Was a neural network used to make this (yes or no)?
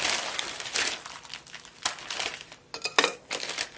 no